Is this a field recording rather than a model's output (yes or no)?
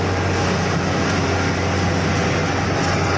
yes